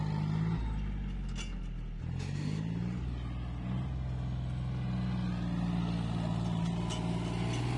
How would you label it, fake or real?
real